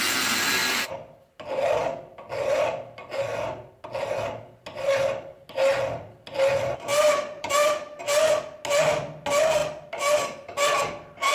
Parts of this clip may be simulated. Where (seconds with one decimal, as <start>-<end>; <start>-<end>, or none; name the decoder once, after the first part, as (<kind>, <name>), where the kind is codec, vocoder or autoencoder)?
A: 6.9-8.0 (vocoder, BigVGAN v2)